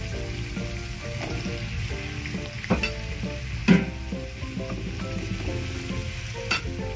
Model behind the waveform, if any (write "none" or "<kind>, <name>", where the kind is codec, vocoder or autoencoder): none